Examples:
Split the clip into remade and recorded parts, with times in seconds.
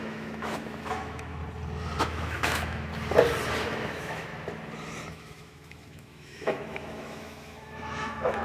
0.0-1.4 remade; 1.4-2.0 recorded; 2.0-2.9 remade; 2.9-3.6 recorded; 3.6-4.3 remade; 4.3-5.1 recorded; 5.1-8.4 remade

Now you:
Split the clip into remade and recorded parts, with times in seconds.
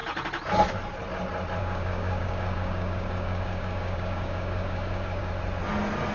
0.0-1.6 recorded; 1.6-5.3 remade; 5.3-6.1 recorded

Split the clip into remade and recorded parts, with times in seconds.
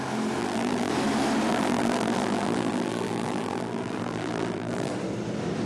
0.0-0.4 recorded; 0.4-0.9 remade; 0.9-1.5 recorded; 1.5-4.9 remade; 4.9-5.7 recorded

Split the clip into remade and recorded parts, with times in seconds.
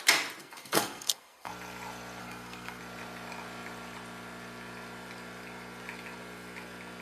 0.0-0.4 recorded; 0.4-1.5 remade; 1.5-2.2 recorded; 2.2-2.8 remade; 2.8-7.0 recorded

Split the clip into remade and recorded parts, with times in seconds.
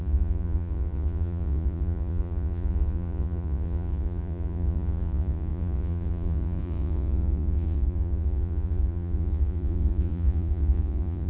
0.0-11.3 remade